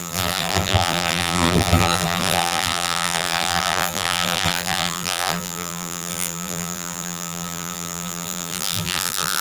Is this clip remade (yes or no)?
yes